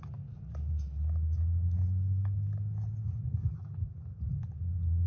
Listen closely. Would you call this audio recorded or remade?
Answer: recorded